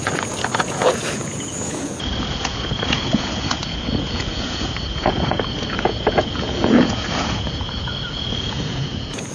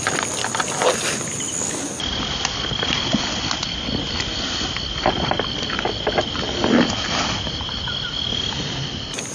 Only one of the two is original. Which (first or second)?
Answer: second